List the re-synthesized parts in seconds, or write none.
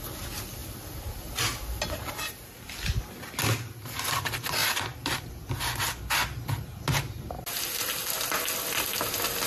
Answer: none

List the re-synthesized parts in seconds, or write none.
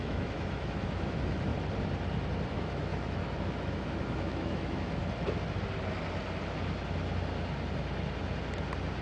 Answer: 0.0-1.5 (autoencoder, DAC-VAE); 2.5-5.0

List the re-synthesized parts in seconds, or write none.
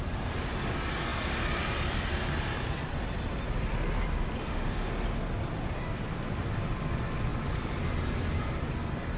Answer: 4.4-4.9 (autoencoder, DAC-VAE)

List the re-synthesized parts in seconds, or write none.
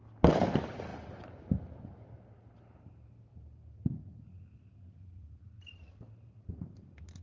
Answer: none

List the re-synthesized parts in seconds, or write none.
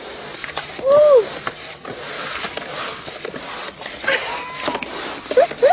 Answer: none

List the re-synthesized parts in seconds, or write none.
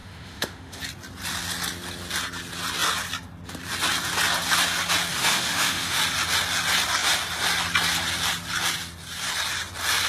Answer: 0.0-0.8 (autoencoder, DAC-VAE); 5.1-6.0